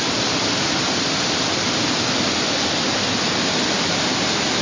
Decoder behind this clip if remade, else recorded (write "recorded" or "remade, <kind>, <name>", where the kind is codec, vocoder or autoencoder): recorded